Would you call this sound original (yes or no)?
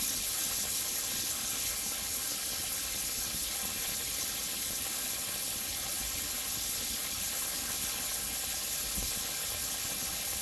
no